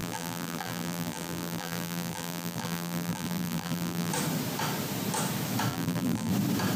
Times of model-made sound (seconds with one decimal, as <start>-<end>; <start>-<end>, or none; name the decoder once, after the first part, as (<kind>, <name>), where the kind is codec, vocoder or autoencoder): 0.0-4.1 (vocoder, BigVGAN v2); 5.7-6.3